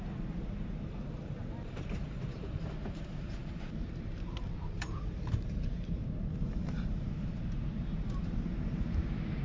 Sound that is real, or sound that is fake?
fake